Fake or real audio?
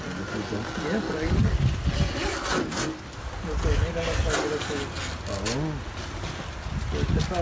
real